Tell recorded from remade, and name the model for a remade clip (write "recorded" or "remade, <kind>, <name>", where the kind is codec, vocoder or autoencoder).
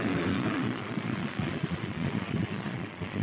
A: remade, vocoder, Vocos